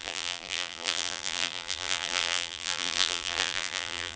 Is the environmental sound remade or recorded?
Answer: remade